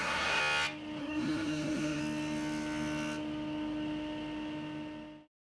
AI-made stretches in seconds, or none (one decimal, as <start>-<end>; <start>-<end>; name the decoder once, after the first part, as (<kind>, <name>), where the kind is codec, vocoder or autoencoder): 0.0-0.4 (codec, SNAC); 1.0-2.0